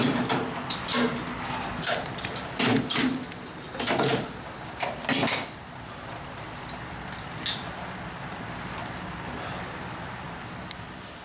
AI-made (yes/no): no